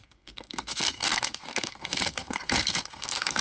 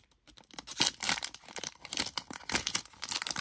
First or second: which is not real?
first